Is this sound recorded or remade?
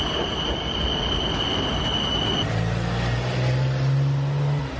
recorded